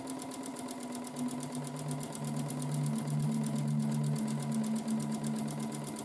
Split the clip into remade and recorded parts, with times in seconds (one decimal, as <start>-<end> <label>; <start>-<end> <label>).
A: 0.0-6.0 recorded